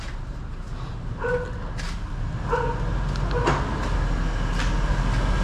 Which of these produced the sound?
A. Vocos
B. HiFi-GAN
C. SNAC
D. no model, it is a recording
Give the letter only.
D